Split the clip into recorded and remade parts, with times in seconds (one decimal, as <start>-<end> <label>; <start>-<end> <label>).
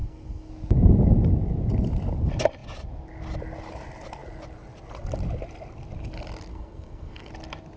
0.0-0.5 remade; 0.5-6.5 recorded; 6.5-7.3 remade; 7.3-7.8 recorded